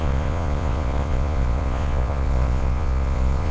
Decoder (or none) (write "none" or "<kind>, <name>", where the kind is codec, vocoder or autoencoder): vocoder, Vocos